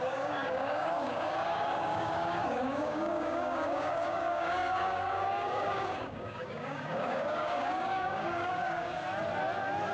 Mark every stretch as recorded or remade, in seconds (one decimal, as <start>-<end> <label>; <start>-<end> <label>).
0.0-9.0 remade; 9.0-9.9 recorded